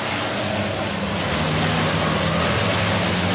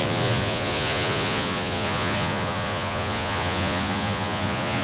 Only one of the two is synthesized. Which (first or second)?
second